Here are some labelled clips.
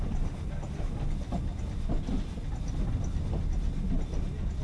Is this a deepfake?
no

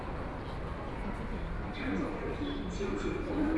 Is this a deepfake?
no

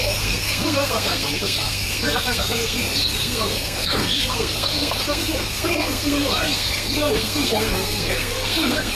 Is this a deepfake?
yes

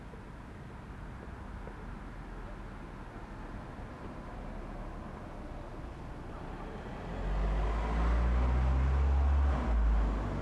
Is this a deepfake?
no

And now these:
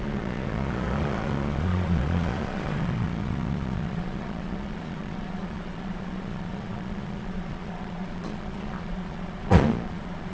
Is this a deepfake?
yes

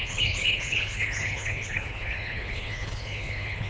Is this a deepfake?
yes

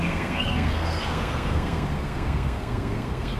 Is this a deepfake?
yes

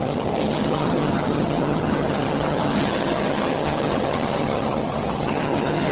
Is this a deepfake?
yes